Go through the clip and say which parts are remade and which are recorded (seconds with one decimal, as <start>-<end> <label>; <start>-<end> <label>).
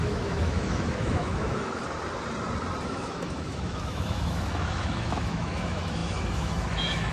0.0-1.8 remade; 1.8-2.9 recorded; 2.9-7.1 remade